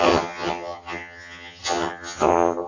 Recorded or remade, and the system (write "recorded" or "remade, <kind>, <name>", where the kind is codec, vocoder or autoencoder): remade, vocoder, HiFi-GAN